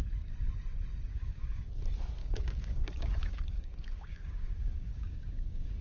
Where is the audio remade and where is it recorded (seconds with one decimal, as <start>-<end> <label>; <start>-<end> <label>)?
0.0-1.1 recorded; 1.1-1.7 remade; 1.7-2.2 recorded; 2.2-5.8 remade